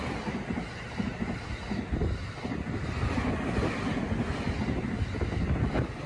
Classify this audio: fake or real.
real